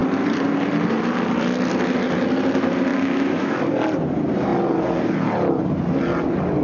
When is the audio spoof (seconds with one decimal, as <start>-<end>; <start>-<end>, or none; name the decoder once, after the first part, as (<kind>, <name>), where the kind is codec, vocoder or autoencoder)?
2.9-3.6 (autoencoder, DAC-VAE)